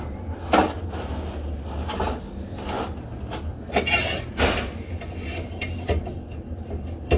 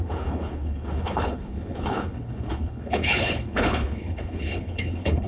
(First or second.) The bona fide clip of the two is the first